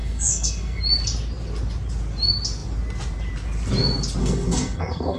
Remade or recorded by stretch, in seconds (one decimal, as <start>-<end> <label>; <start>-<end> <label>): 0.0-0.8 remade; 0.8-4.2 recorded; 4.2-5.2 remade